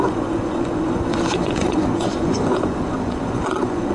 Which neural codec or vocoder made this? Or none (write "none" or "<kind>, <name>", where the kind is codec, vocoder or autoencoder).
vocoder, Vocos